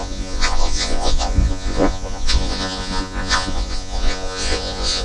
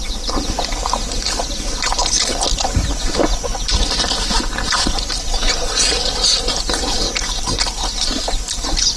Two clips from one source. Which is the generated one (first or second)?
first